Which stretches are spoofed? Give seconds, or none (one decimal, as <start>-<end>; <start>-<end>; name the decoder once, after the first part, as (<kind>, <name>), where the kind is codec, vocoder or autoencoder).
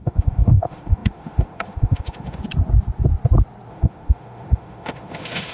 0.0-2.4 (autoencoder, DAC-VAE); 3.7-5.5